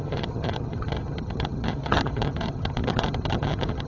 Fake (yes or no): yes